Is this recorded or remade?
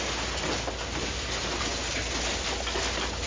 recorded